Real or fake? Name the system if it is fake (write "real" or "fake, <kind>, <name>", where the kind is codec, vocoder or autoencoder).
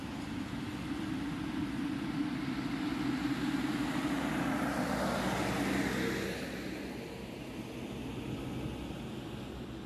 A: real